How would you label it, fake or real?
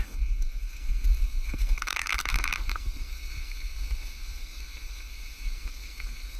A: fake